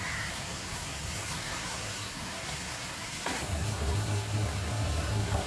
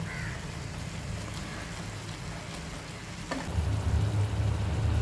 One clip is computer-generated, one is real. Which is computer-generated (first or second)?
first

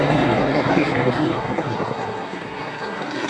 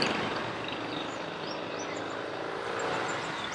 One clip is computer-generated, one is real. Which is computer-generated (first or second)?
first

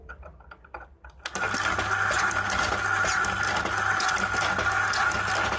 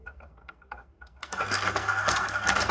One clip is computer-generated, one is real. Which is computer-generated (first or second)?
second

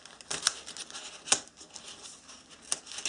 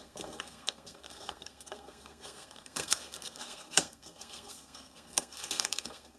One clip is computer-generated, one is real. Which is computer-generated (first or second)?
second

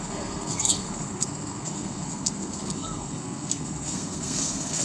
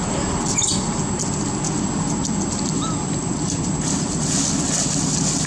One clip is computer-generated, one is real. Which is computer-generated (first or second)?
first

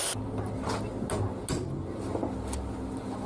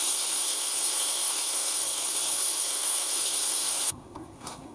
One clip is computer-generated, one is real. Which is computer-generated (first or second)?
second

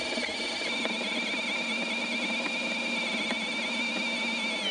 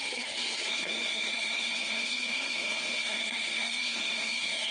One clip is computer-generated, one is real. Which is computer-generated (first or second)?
second